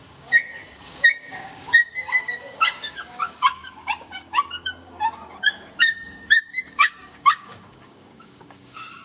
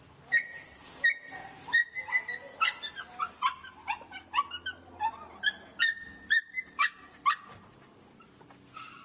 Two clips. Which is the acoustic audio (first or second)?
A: second